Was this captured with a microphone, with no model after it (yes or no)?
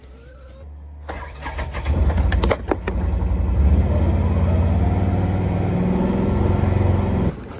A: yes